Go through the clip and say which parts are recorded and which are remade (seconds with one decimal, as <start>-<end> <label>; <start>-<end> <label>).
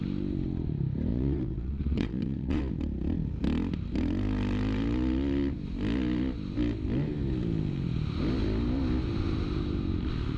0.0-1.1 recorded; 1.1-2.6 remade; 2.6-10.4 recorded